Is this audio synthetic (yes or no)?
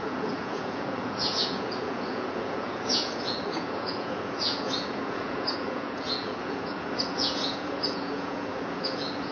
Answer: yes